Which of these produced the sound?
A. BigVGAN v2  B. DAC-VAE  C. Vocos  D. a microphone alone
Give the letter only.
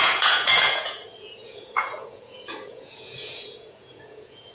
C